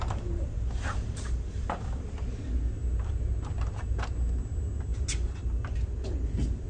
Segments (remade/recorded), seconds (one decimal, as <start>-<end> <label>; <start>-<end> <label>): 0.0-2.2 remade; 2.2-6.7 recorded